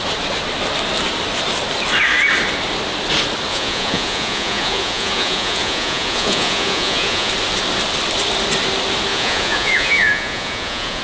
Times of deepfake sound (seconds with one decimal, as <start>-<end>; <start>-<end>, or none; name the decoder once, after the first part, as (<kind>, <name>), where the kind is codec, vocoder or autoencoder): 3.5-7.3 (vocoder, Vocos); 9.1-11.0